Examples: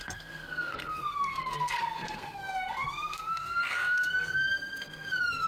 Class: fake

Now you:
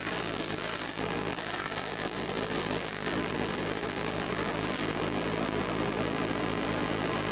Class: fake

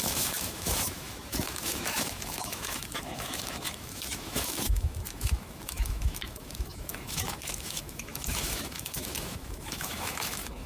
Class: fake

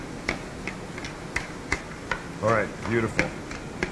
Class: real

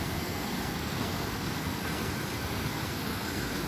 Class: fake